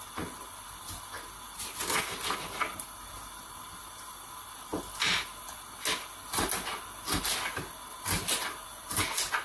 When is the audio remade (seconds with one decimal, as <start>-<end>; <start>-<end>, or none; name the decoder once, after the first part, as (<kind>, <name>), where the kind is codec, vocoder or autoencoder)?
none

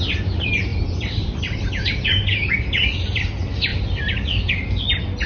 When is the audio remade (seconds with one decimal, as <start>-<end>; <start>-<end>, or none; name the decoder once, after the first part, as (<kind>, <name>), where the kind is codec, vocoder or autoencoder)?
0.7-1.7 (vocoder, BigVGAN v2); 3.7-4.5

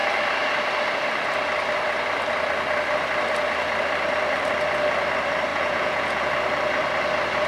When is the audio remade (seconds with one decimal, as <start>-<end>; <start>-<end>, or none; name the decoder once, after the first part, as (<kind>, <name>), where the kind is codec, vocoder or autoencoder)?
5.5-6.3 (vocoder, Vocos)

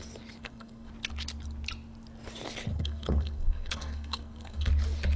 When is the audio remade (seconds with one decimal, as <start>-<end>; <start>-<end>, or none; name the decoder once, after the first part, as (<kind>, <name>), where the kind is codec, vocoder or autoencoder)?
0.4-0.9 (codec, SNAC); 2.7-4.7

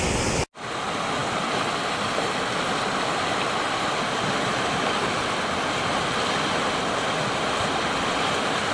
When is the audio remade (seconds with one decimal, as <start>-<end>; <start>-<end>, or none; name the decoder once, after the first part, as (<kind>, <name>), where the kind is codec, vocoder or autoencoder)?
none